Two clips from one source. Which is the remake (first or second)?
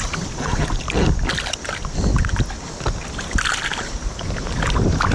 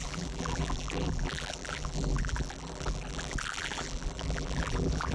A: second